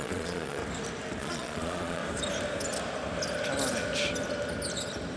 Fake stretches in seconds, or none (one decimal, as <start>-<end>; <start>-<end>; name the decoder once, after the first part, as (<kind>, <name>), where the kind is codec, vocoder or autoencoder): 0.0-0.6 (vocoder, Vocos); 1.2-2.0

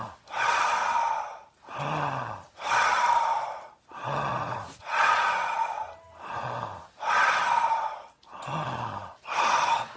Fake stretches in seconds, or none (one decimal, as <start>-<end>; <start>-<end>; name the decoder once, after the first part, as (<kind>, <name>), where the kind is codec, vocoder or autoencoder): 4.3-5.9 (vocoder, Vocos)

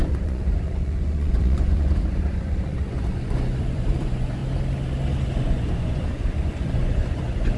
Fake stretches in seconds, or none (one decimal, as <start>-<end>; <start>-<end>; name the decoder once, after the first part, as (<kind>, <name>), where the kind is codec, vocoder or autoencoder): 0.0-4.4 (vocoder, Vocos); 5.4-7.6

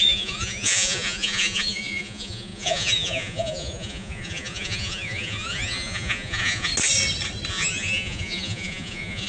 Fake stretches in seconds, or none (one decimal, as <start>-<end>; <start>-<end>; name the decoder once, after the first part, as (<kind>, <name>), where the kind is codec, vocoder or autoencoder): 0.0-6.7 (vocoder, Vocos); 7.5-9.3

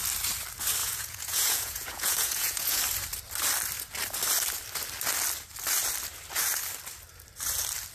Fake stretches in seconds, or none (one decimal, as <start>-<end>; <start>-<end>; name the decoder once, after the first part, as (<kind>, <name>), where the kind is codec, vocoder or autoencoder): 0.8-2.8 (vocoder, Vocos)